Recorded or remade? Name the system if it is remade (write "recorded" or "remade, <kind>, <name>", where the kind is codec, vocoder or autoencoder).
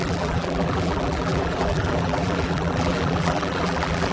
remade, vocoder, BigVGAN v2